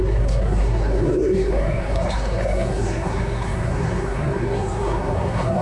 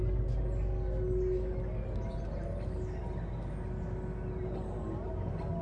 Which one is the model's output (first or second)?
first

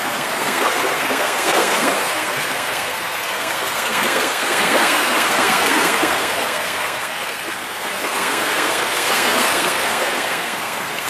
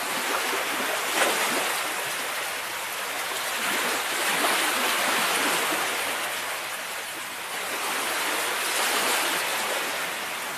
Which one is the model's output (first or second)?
first